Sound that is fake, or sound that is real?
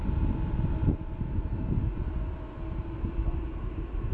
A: real